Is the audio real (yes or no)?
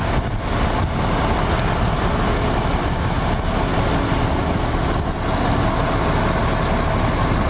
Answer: yes